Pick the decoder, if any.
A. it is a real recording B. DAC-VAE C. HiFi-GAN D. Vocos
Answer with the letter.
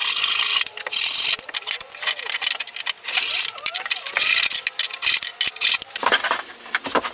A